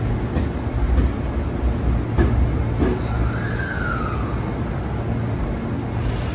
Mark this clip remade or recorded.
recorded